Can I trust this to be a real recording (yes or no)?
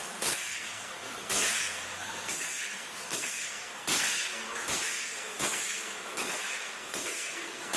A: no